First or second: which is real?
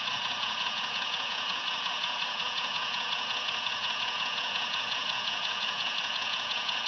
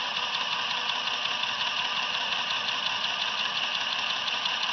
second